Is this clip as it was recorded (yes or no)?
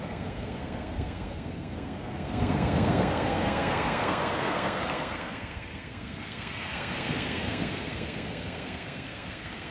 no